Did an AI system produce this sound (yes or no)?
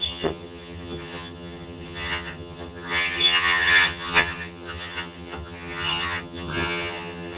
yes